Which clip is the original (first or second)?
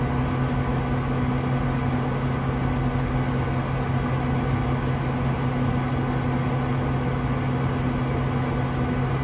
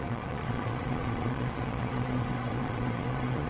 first